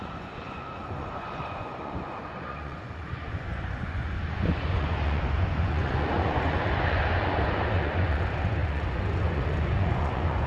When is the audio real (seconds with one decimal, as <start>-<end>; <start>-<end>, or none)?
none